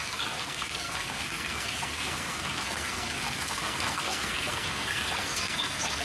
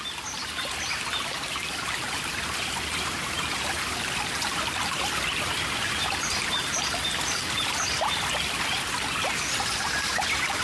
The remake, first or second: first